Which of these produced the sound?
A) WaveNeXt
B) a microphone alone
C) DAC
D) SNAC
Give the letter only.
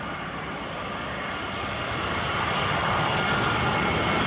B